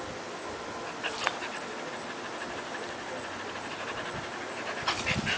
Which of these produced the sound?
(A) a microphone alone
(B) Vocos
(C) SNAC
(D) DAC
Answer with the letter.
A